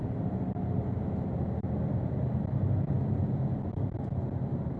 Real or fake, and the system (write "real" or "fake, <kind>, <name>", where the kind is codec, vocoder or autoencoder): real